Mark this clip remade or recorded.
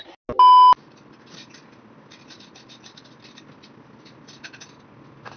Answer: recorded